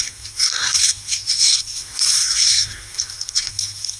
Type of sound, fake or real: fake